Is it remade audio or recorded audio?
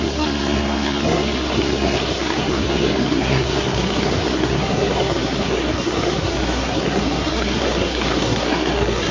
remade